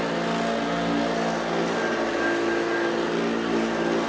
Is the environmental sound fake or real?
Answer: real